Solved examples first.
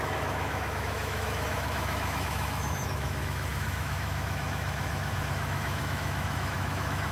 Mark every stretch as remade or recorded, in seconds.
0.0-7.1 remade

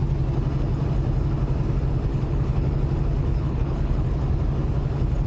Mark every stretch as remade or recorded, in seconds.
0.0-2.1 recorded; 2.1-2.8 remade; 2.8-3.2 recorded; 3.2-4.2 remade; 4.2-5.3 recorded